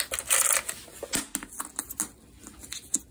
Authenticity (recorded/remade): recorded